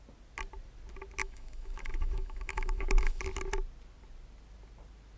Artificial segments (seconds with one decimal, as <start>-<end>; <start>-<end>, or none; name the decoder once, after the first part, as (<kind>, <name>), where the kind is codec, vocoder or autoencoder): 1.2-3.2 (autoencoder, DAC-VAE)

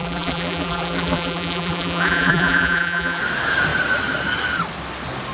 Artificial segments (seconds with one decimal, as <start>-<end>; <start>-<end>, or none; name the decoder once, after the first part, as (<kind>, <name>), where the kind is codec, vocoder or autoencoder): 0.0-3.2 (vocoder, BigVGAN v2)

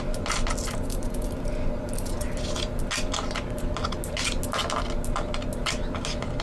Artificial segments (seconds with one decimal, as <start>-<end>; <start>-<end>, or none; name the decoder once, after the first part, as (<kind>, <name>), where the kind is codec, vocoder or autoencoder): none

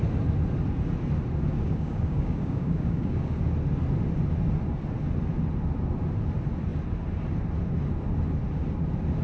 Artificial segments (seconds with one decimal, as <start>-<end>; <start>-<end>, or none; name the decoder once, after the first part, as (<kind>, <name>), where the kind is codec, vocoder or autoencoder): 1.5-3.4 (codec, DAC)

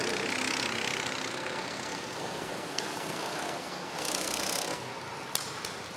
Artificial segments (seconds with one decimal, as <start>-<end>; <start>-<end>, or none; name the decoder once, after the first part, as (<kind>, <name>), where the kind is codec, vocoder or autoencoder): 1.3-4.9 (codec, SNAC)

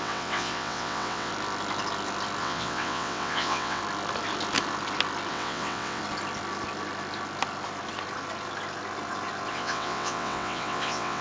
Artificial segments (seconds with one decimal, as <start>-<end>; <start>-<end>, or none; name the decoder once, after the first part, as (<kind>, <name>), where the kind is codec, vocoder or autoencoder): 0.0-1.3 (vocoder, WaveNeXt); 2.4-3.8; 5.3-6.0; 9.5-11.2

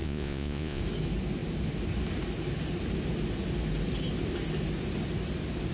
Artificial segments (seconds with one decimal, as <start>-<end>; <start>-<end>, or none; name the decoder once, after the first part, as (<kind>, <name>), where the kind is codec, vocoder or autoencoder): 0.0-0.8 (vocoder, Vocos)